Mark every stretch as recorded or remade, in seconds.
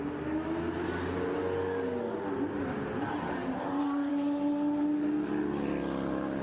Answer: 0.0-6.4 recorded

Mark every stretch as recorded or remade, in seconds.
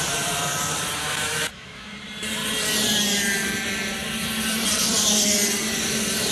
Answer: 0.0-1.0 recorded; 1.0-1.9 remade; 1.9-6.3 recorded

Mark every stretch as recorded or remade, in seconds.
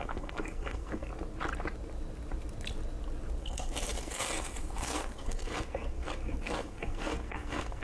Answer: 0.0-1.1 remade; 1.1-3.4 recorded; 3.4-7.8 remade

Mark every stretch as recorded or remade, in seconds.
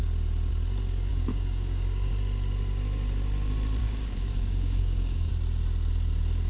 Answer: 0.0-1.1 recorded; 1.1-2.1 remade; 2.1-3.8 recorded; 3.8-5.3 remade; 5.3-6.5 recorded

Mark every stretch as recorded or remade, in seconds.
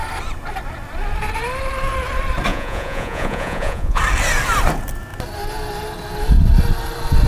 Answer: 0.0-2.5 recorded; 2.5-4.0 remade; 4.0-7.3 recorded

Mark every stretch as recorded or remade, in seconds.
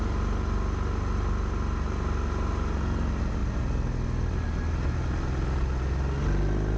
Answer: 0.0-6.8 recorded